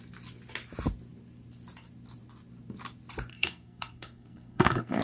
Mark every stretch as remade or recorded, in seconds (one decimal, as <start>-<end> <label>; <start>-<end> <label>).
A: 0.0-3.3 recorded; 3.3-5.0 remade

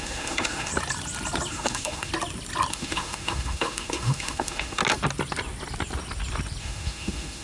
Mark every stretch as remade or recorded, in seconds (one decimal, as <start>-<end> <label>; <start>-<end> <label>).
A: 0.0-0.7 remade; 0.7-1.5 recorded; 1.5-2.1 remade; 2.1-2.7 recorded; 2.7-4.8 remade; 4.8-6.6 recorded; 6.6-7.4 remade

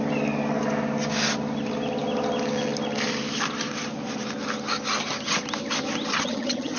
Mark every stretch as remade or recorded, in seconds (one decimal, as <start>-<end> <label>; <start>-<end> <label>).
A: 0.0-6.1 recorded; 6.1-6.8 remade

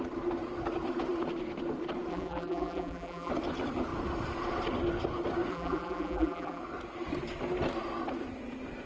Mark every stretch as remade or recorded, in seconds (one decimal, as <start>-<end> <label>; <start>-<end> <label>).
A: 0.0-2.1 recorded; 2.1-3.3 remade; 3.3-5.5 recorded; 5.5-6.6 remade; 6.6-8.9 recorded

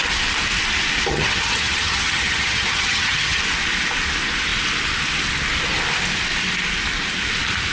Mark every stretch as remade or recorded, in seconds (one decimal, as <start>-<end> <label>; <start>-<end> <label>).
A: 0.0-1.1 recorded; 1.1-3.4 remade; 3.4-7.7 recorded

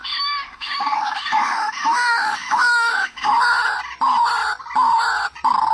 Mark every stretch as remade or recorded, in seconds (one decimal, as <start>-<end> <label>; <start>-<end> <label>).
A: 0.0-3.3 remade; 3.3-5.7 recorded

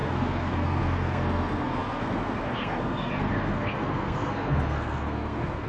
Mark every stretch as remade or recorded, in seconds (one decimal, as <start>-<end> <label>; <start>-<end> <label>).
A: 0.0-5.7 remade